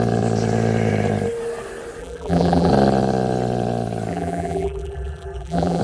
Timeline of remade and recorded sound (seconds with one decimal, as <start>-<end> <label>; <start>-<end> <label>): 0.0-2.0 recorded; 2.0-2.7 remade; 2.7-4.1 recorded; 4.1-5.8 remade